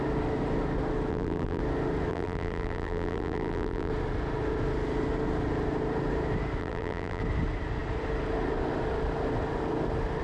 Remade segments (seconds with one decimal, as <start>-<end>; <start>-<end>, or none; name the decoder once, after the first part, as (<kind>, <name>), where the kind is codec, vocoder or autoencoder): 1.1-1.6 (vocoder, BigVGAN v2); 2.1-3.9; 6.6-7.2